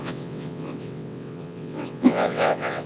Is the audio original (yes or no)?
no